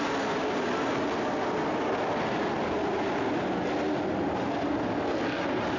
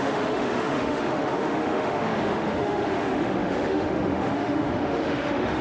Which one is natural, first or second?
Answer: first